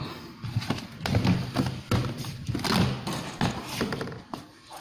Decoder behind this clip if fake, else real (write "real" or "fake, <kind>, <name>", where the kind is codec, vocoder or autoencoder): real